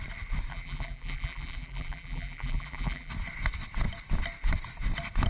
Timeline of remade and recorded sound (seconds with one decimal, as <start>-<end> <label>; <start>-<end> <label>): 0.0-0.5 recorded; 0.5-3.1 remade; 3.1-5.3 recorded